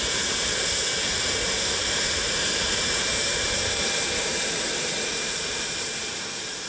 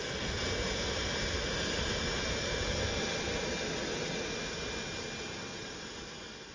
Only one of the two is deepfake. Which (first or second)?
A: first